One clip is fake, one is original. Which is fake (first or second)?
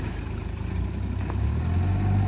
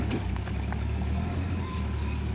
second